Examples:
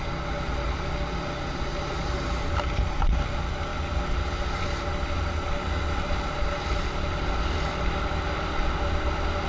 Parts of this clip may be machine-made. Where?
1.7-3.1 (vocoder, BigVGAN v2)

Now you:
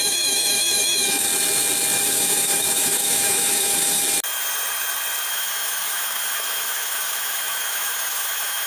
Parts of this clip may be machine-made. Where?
0.0-1.3 (autoencoder, DAC-VAE); 2.0-4.0; 5.3-8.7

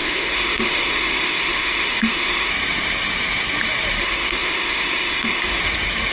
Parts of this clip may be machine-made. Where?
0.0-2.5 (autoencoder, DAC-VAE); 4.0-5.6

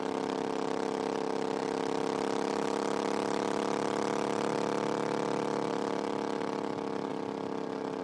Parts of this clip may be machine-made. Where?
none